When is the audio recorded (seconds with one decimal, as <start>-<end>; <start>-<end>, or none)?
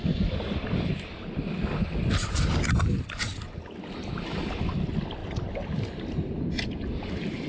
0.0-7.5